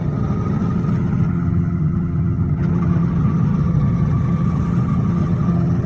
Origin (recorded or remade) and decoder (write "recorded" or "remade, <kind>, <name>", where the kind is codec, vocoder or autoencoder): remade, vocoder, HiFi-GAN